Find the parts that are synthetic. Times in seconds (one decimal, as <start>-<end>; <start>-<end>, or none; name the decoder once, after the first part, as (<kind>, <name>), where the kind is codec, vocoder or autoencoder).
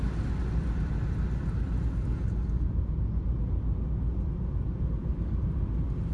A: none